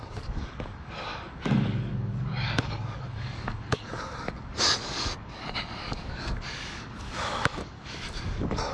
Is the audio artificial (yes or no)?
yes